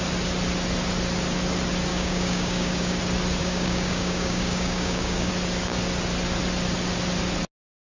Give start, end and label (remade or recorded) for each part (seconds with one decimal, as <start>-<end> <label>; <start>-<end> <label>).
0.0-1.9 recorded; 1.9-3.0 remade; 3.0-3.4 recorded; 3.4-5.3 remade; 5.3-7.8 recorded